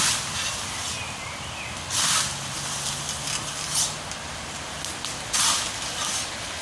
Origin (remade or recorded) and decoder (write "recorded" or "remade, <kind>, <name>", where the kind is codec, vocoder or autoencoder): recorded